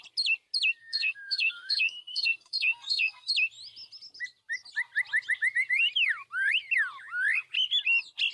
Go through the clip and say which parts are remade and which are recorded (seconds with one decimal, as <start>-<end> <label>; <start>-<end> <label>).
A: 0.0-0.8 recorded; 0.8-3.3 remade; 3.3-8.3 recorded